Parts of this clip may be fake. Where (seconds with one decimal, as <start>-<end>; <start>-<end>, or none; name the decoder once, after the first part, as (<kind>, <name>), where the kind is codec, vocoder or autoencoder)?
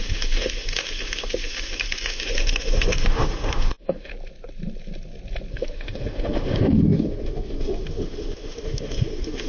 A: 0.0-4.1 (autoencoder, DAC-VAE); 5.5-9.5